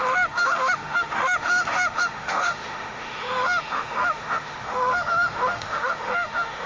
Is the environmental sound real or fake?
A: fake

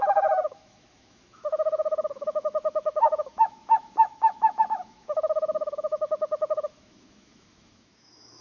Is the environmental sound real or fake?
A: fake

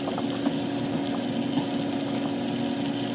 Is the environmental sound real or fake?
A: real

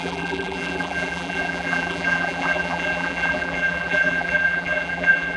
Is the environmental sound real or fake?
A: fake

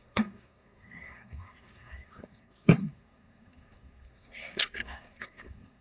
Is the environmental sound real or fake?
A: fake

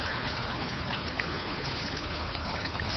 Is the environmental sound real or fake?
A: fake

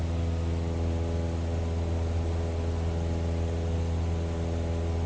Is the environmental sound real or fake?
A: real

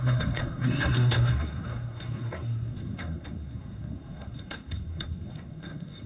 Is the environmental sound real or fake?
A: fake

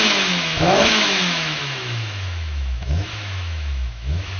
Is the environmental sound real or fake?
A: fake